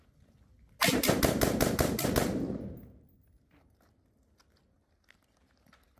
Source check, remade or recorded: recorded